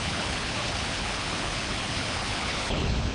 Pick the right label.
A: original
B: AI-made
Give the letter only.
B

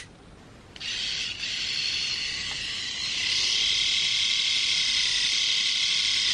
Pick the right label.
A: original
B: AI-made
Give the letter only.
A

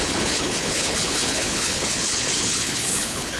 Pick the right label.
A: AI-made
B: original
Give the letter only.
A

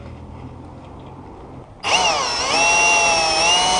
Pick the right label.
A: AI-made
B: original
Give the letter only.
B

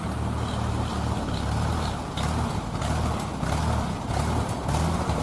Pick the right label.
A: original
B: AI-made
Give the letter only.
A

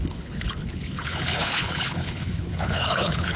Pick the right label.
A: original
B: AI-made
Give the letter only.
B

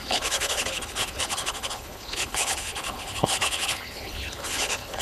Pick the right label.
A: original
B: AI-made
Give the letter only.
B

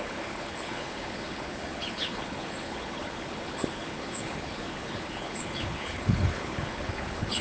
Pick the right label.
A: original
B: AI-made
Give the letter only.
B